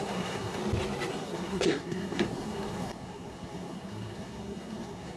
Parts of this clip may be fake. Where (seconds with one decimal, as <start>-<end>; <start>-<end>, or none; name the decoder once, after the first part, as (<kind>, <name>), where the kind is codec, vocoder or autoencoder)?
0.0-0.6 (codec, SNAC); 1.1-5.2